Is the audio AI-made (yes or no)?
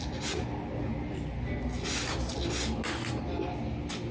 no